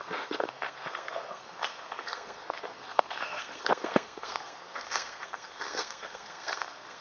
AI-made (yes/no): yes